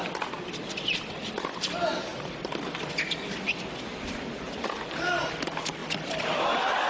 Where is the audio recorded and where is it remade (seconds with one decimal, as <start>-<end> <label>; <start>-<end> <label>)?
0.0-6.9 recorded